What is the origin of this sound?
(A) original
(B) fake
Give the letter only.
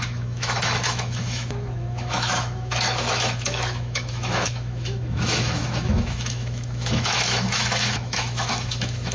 B